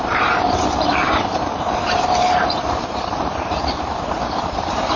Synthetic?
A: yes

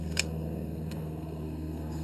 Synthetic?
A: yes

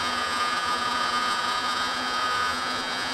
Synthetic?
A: yes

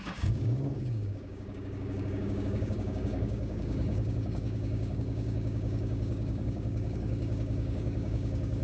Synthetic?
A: yes